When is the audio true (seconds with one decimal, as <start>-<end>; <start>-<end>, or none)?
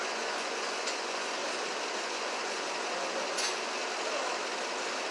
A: 1.4-2.0; 3.8-5.1